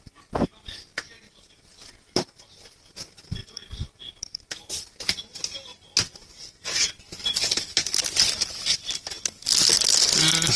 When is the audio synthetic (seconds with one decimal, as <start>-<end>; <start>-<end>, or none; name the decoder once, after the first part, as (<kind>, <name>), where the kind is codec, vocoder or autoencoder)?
none